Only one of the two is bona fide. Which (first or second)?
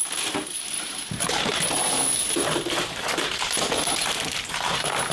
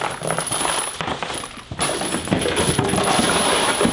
second